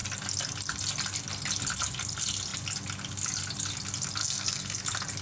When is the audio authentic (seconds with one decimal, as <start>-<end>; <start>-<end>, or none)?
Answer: 0.0-4.2; 4.8-5.2